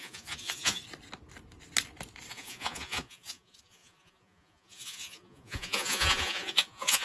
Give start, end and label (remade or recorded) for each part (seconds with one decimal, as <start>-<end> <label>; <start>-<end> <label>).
0.0-0.8 remade; 0.8-2.3 recorded; 2.3-7.0 remade